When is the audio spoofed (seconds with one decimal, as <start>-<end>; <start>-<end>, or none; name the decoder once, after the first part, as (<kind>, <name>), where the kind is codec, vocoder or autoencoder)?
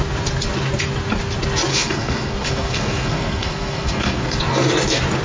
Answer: 1.7-4.4 (codec, SNAC)